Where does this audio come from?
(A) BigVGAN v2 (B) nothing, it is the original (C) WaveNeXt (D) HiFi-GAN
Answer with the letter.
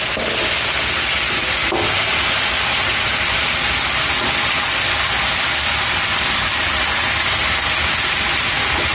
B